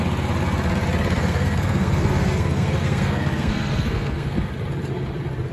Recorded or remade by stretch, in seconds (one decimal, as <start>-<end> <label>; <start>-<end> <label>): 0.0-1.2 recorded; 1.2-4.5 remade; 4.5-5.5 recorded